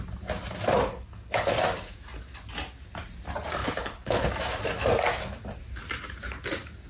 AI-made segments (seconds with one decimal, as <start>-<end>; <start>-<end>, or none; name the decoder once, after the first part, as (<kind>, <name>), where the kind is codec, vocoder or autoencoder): 0.9-1.5 (codec, HILCodec); 3.6-4.3